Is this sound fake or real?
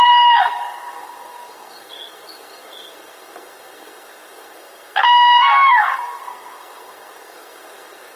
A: fake